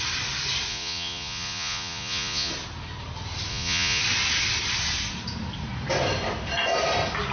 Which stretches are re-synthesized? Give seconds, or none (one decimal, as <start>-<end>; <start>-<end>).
0.7-2.5; 3.5-4.0